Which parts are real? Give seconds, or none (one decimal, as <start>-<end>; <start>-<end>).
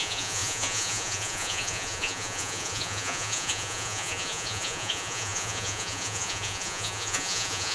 none